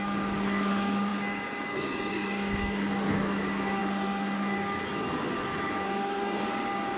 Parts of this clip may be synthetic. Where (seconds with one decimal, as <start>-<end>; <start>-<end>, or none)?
0.0-3.8; 5.8-7.0